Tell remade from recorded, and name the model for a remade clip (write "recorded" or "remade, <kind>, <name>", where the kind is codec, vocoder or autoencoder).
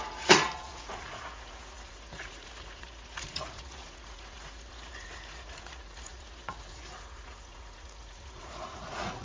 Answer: remade, vocoder, Vocos